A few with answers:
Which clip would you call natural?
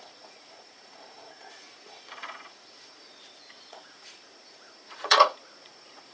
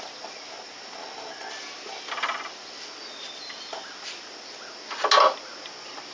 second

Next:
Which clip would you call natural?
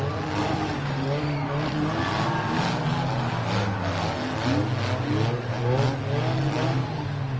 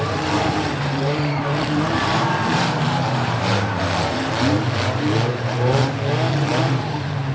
first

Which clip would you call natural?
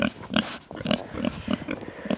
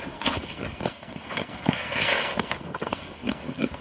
first